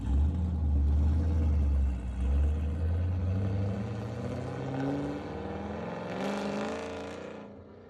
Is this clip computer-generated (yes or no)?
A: no